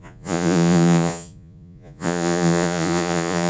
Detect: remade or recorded remade